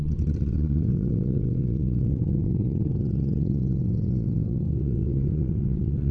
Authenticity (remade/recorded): remade